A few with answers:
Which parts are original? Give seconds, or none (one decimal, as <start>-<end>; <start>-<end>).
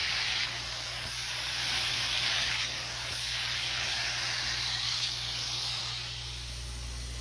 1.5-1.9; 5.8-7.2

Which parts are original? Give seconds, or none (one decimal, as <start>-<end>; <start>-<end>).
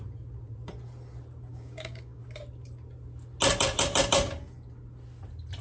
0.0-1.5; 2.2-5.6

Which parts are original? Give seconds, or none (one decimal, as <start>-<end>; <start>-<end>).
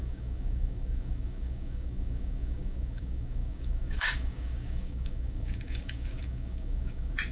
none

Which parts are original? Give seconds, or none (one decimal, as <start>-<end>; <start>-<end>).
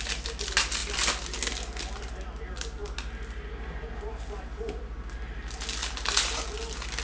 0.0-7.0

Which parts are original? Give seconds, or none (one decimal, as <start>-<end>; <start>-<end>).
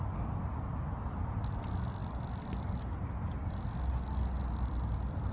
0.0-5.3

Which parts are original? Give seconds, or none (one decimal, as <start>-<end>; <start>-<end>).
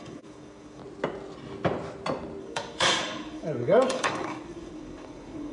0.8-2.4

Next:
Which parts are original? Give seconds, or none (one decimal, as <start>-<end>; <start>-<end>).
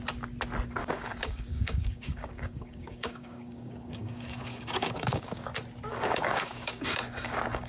0.0-0.8; 5.4-5.9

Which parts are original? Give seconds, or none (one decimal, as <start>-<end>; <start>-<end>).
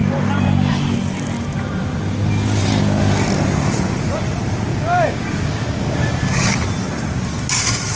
0.0-4.7; 6.3-8.0